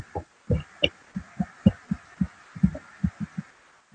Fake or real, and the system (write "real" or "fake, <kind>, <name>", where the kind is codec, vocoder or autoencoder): real